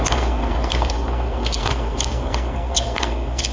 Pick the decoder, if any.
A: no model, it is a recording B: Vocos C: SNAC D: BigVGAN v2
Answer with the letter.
C